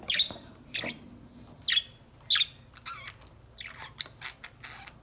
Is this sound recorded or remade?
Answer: recorded